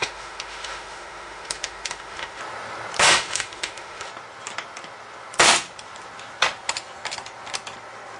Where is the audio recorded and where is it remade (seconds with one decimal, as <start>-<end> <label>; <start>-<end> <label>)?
0.0-2.4 remade; 2.4-3.0 recorded; 3.0-4.1 remade; 4.1-8.2 recorded